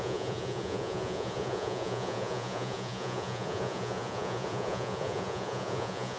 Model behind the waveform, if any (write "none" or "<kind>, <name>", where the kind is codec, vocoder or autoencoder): vocoder, Vocos